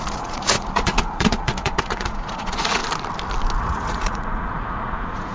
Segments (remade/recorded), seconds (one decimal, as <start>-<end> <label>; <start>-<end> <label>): 0.0-2.8 remade; 2.8-3.6 recorded; 3.6-5.3 remade